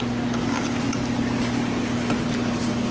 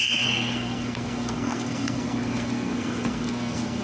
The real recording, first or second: first